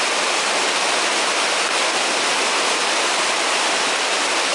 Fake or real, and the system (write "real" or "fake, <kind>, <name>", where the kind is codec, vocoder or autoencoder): real